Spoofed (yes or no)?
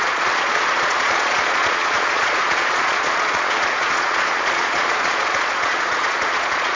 yes